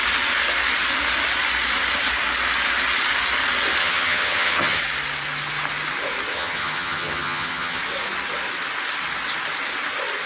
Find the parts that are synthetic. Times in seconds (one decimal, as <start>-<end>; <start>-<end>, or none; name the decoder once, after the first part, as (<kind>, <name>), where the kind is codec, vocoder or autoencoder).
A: 3.8-4.8 (vocoder, HiFi-GAN); 6.3-7.8